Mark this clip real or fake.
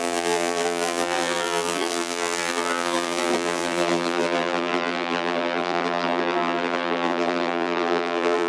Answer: fake